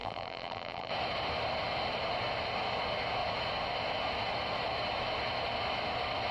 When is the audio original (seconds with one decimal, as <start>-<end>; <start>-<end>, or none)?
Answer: 0.9-6.3